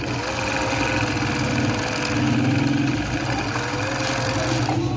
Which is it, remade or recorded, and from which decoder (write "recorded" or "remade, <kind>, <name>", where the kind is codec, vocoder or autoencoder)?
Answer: recorded